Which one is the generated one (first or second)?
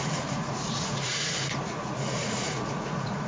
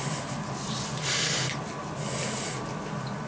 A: first